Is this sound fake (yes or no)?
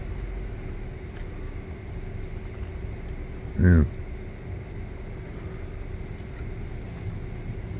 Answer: no